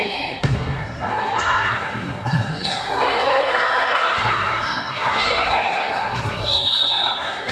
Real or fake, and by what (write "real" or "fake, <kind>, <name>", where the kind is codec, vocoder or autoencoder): fake, codec, SNAC